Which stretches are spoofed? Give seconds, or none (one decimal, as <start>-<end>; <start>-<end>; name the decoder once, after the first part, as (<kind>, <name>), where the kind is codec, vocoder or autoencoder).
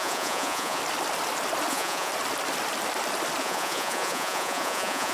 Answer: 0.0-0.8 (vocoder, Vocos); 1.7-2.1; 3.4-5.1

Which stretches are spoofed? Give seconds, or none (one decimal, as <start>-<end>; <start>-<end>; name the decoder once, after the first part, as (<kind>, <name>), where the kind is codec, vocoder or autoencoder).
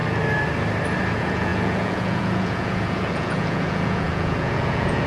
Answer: 1.1-5.1 (vocoder, Vocos)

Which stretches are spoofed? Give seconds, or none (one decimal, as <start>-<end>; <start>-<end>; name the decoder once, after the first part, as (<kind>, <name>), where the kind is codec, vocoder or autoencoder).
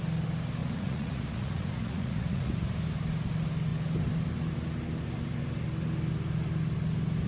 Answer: 0.6-2.5 (vocoder, Vocos)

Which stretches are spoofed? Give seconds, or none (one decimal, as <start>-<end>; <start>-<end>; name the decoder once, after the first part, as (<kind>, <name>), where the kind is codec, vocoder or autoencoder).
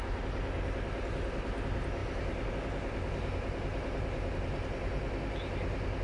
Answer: none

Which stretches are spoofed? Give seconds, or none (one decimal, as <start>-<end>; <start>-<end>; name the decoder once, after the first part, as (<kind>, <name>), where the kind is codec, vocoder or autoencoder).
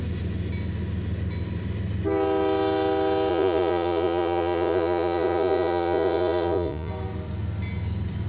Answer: 3.3-6.9 (vocoder, Vocos)